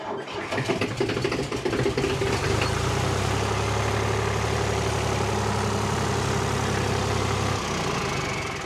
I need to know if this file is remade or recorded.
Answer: recorded